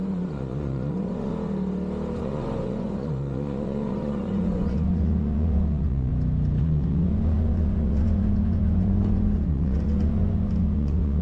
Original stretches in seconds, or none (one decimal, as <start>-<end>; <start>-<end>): 1.3-2.2; 6.1-6.6